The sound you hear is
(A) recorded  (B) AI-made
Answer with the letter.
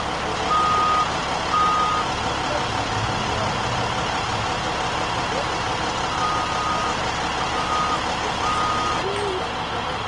A